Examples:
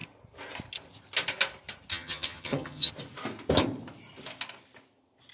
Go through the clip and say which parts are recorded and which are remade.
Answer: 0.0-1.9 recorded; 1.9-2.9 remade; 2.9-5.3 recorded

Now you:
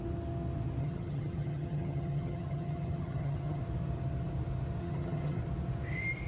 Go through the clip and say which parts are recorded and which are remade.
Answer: 0.0-0.8 recorded; 0.8-3.6 remade; 3.6-4.8 recorded; 4.8-5.4 remade; 5.4-6.3 recorded

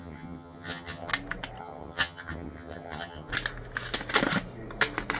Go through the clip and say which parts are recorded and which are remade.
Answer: 0.0-1.1 remade; 1.1-1.6 recorded; 1.6-3.3 remade; 3.3-5.2 recorded

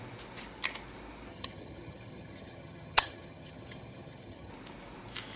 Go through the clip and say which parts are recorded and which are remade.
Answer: 0.0-1.3 recorded; 1.3-4.5 remade; 4.5-5.4 recorded

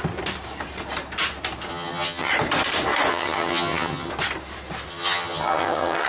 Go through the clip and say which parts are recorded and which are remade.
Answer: 0.0-1.7 recorded; 1.7-2.3 remade; 2.3-3.1 recorded; 3.1-4.1 remade; 4.1-4.9 recorded; 4.9-6.1 remade

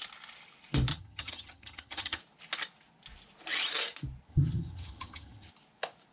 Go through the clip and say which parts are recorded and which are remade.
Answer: 0.0-0.9 recorded; 0.9-2.2 remade; 2.2-4.3 recorded; 4.3-5.5 remade; 5.5-6.1 recorded